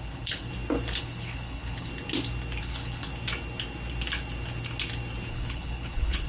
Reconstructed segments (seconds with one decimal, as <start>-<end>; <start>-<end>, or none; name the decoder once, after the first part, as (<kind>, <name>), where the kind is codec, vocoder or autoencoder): 0.0-0.5 (codec, HILCodec); 1.0-1.9; 2.6-3.1; 5.3-6.3